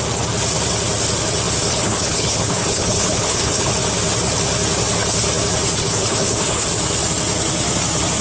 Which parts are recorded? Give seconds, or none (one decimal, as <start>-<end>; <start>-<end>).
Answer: 0.0-1.7; 3.7-5.8; 6.7-8.2